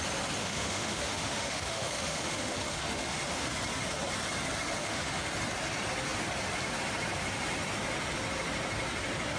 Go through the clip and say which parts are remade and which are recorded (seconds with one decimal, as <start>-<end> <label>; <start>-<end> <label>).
0.0-0.4 recorded; 0.4-3.5 remade; 3.5-4.8 recorded; 4.8-5.3 remade; 5.3-9.4 recorded